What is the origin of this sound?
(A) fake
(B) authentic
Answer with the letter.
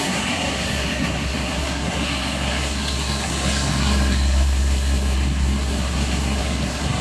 A